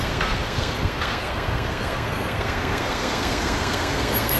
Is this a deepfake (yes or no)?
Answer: yes